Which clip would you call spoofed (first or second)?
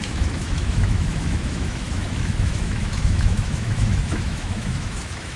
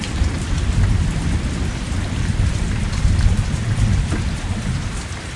first